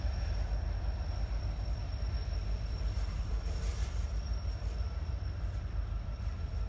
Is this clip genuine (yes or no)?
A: no